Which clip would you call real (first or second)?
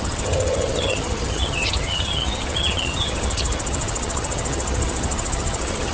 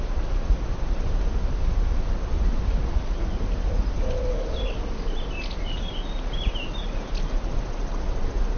second